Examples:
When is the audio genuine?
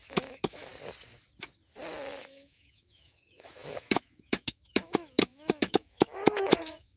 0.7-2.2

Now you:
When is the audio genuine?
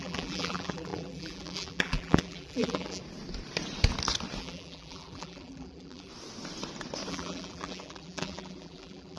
3.0-4.4; 6.1-7.1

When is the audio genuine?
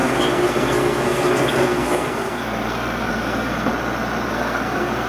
3.7-4.3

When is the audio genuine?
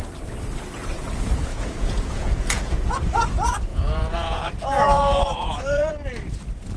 0.0-1.5; 2.9-3.7; 5.9-6.8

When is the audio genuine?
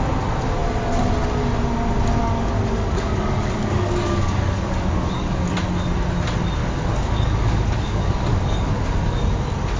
0.0-2.2; 5.5-6.6; 9.2-9.8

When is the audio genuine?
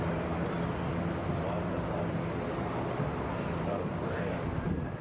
0.0-1.2; 4.2-5.0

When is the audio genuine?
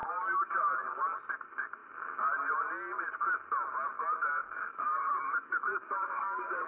1.0-4.4